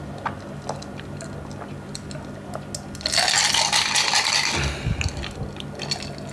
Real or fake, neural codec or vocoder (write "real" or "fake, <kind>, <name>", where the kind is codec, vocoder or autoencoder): real